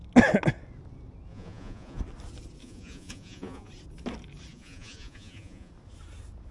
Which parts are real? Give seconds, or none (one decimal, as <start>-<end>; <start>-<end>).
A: 0.0-1.3; 2.0-2.6; 3.7-4.5; 5.7-6.5